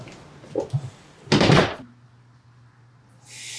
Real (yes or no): yes